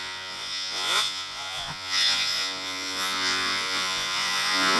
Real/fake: fake